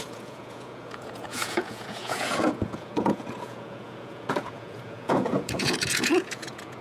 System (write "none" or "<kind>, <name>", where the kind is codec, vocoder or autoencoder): vocoder, Vocos